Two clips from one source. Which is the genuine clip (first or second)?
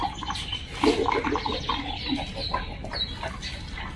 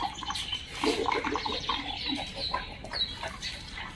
first